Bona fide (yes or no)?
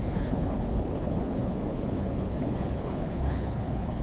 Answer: no